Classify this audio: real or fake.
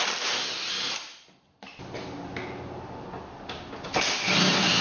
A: real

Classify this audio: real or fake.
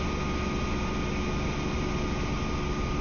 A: real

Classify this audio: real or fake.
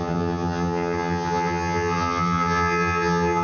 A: fake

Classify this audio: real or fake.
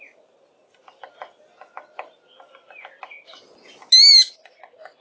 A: real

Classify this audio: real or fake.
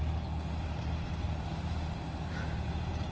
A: real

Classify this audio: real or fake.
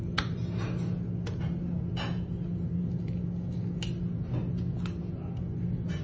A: real